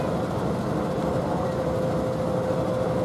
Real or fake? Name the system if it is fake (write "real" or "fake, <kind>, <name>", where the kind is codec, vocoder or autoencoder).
real